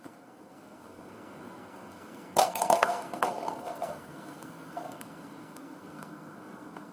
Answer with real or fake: fake